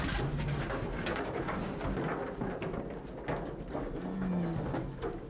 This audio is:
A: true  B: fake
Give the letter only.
A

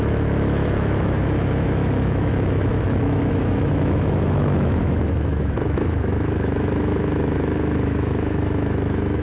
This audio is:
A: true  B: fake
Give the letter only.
B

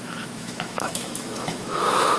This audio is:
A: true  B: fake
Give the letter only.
B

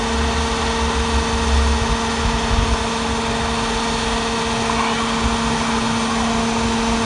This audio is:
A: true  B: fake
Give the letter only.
A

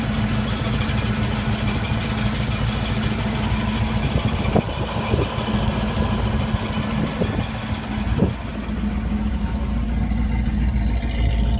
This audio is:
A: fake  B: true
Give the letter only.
B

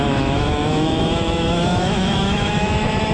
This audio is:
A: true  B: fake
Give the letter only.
B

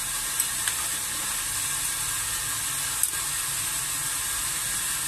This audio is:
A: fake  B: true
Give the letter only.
B